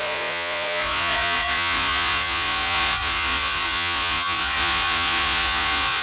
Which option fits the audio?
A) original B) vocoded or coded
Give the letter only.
B